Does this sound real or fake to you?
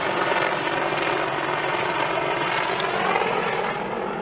real